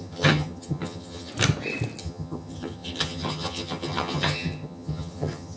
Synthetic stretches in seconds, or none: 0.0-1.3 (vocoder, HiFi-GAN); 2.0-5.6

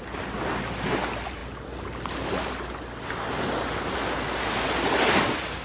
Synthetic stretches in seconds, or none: none

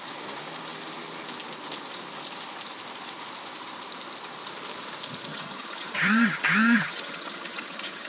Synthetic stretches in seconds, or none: 5.3-8.1 (vocoder, HiFi-GAN)

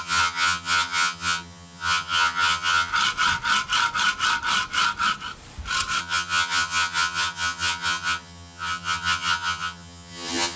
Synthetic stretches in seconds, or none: 0.0-2.9 (vocoder, HiFi-GAN); 6.0-10.6